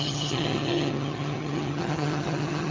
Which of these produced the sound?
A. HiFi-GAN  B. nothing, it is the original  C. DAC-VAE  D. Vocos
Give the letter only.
A